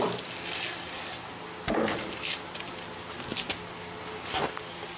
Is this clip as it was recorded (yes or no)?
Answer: yes